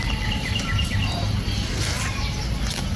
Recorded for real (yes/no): yes